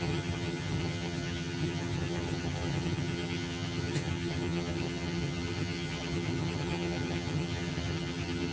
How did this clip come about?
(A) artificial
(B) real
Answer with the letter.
A